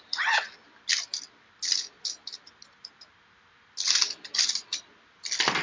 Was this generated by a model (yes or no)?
no